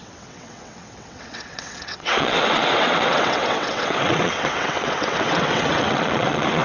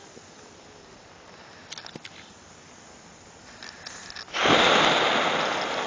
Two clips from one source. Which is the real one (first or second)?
second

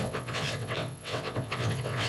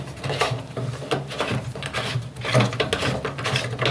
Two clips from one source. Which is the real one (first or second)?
second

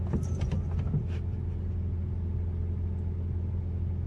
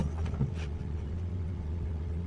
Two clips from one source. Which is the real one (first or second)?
first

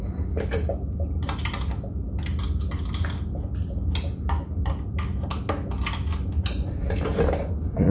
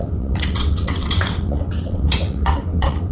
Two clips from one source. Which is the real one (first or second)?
first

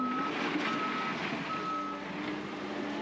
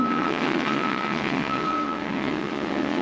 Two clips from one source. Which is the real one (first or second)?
first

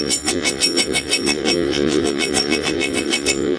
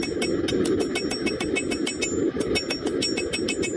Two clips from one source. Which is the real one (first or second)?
second